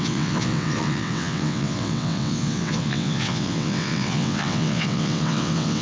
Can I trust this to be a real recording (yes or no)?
no